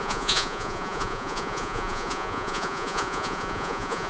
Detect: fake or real fake